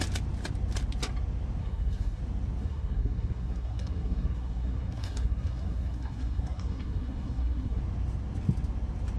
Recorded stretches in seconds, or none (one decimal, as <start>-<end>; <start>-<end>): 0.0-1.6; 2.2-2.6; 7.8-9.2